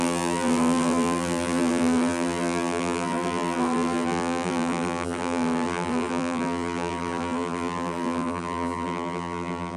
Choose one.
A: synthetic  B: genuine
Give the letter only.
A